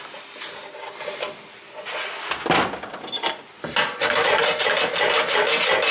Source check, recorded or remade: recorded